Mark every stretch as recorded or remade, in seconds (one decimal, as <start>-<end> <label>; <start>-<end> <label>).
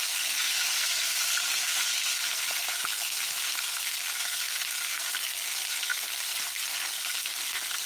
0.0-7.9 remade